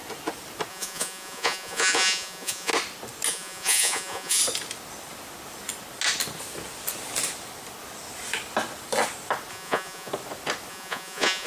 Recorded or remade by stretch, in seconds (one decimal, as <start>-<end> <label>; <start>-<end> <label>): 0.0-0.7 recorded; 0.7-2.7 remade; 2.7-3.3 recorded; 3.3-4.4 remade; 4.4-9.5 recorded; 9.5-10.1 remade; 10.1-10.7 recorded; 10.7-11.5 remade

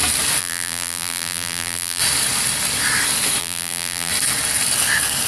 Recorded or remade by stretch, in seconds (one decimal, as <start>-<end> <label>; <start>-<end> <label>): 0.0-0.4 recorded; 0.4-2.0 remade; 2.0-3.4 recorded; 3.4-4.1 remade; 4.1-5.3 recorded

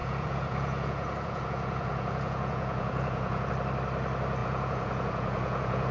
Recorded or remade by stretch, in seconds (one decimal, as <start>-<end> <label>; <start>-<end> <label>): 0.0-3.5 remade; 3.5-4.4 recorded; 4.4-5.9 remade

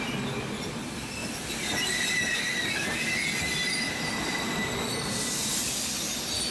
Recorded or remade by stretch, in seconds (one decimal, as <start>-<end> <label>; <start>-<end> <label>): 0.0-1.2 recorded; 1.2-2.4 remade; 2.4-3.5 recorded; 3.5-4.7 remade; 4.7-6.5 recorded

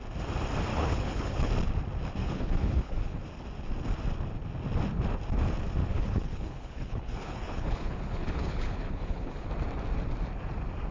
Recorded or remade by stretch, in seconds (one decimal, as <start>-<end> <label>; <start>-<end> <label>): 0.0-0.7 recorded; 0.7-1.5 remade; 1.5-2.2 recorded; 2.2-3.2 remade; 3.2-5.8 recorded; 5.8-9.5 remade; 9.5-10.9 recorded

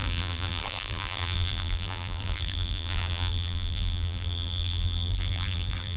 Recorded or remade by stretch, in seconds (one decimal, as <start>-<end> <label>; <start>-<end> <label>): 0.0-6.0 remade

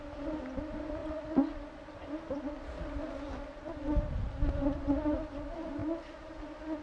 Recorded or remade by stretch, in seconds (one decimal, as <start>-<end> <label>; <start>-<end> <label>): 0.0-6.8 recorded

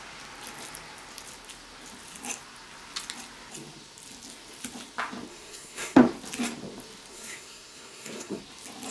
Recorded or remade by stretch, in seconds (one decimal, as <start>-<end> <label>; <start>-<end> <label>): 0.0-5.3 recorded; 5.3-6.0 remade; 6.0-7.1 recorded; 7.1-8.4 remade; 8.4-8.9 recorded